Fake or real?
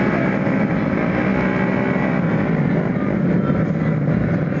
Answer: real